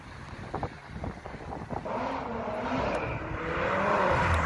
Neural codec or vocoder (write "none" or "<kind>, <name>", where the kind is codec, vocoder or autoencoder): none